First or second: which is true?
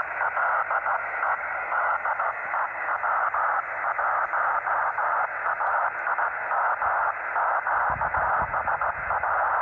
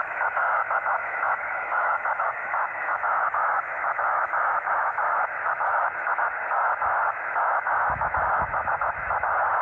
first